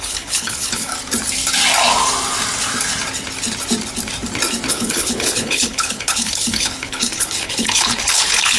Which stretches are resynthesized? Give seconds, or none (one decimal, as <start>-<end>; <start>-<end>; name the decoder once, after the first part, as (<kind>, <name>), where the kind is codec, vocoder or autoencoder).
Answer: 0.0-0.9 (codec, HILCodec); 4.7-8.6